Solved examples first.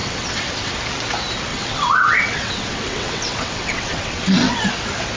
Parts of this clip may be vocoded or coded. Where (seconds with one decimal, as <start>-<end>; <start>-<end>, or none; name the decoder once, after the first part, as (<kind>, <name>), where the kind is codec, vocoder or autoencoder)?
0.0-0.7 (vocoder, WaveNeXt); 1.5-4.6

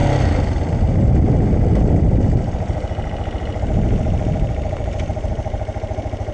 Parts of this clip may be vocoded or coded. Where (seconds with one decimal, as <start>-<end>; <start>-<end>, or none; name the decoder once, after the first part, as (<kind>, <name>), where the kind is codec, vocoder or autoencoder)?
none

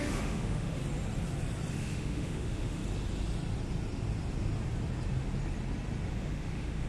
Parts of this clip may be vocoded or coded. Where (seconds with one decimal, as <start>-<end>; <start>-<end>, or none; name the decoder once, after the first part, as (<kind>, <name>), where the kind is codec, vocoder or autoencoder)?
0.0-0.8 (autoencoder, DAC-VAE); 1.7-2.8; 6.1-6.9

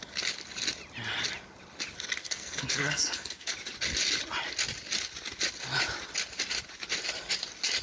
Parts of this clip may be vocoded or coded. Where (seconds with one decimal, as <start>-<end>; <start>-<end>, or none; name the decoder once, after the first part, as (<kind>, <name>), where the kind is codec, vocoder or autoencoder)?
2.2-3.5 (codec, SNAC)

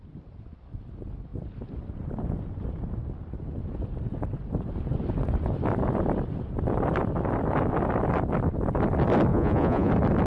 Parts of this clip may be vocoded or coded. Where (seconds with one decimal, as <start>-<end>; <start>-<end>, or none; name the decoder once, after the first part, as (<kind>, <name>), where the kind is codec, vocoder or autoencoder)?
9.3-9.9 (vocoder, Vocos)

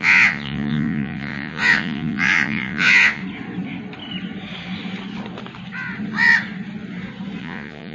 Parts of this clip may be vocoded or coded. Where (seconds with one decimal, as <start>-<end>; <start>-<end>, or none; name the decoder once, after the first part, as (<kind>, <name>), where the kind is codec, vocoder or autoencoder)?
0.0-3.2 (vocoder, Vocos); 7.4-7.9